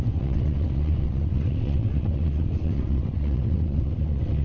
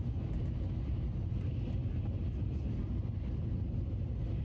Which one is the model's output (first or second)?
first